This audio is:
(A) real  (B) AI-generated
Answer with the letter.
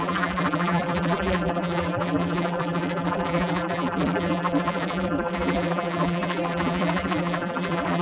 B